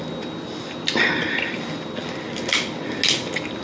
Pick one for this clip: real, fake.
real